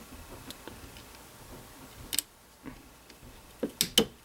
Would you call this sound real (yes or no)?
yes